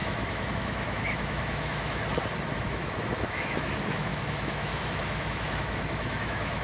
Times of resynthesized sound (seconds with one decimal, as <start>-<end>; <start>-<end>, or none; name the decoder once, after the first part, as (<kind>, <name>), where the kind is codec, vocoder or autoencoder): 0.0-2.0 (autoencoder, DAC-VAE); 2.6-6.6